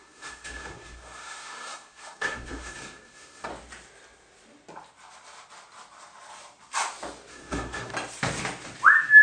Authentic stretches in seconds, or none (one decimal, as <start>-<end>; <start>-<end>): 3.5-7.3; 7.9-9.2